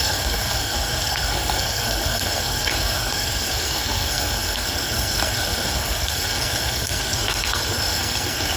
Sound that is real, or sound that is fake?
fake